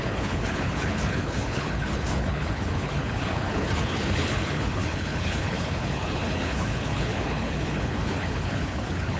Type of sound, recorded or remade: remade